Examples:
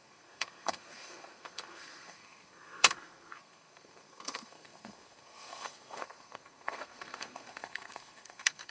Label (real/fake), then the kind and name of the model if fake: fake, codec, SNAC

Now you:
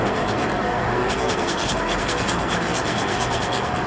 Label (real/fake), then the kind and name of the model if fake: fake, codec, SNAC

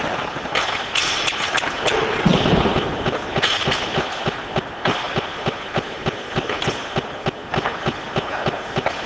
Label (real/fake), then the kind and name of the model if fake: real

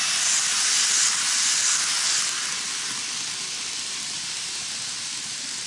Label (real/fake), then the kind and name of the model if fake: real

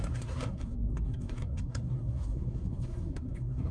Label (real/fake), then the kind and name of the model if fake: fake, codec, SNAC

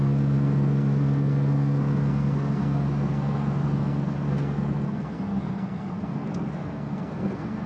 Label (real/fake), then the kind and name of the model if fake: fake, codec, SNAC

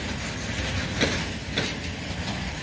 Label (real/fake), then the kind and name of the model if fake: real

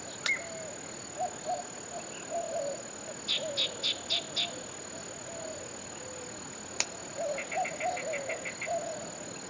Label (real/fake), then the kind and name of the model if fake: real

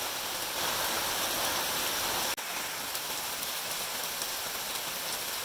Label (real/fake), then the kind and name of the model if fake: real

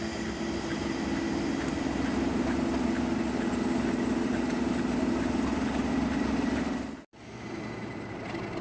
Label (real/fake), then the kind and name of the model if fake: real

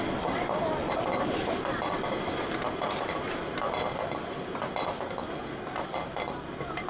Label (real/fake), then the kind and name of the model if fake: real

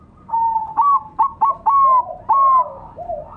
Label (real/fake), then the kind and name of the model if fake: real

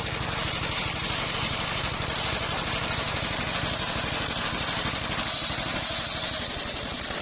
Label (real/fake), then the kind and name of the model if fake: real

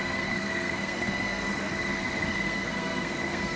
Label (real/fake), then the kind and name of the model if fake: fake, codec, SNAC